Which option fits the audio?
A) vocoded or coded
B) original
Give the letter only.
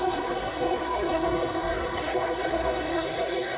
A